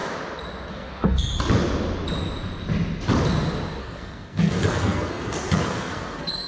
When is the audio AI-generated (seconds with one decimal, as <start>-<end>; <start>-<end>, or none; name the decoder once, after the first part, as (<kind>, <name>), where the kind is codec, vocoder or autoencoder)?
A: 0.7-1.3 (codec, SNAC); 3.8-6.5